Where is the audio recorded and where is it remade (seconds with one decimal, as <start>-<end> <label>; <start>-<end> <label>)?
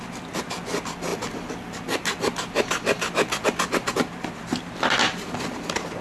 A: 0.0-6.0 recorded